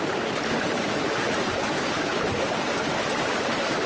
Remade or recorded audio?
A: recorded